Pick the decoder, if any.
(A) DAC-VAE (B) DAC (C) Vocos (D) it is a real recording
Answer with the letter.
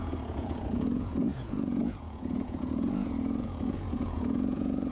C